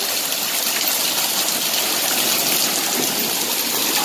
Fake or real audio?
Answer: real